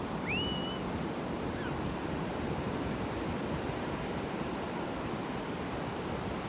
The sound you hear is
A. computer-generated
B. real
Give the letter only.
B